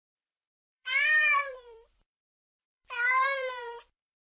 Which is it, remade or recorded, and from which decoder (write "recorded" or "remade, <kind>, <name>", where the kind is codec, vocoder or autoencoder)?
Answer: remade, vocoder, BigVGAN v2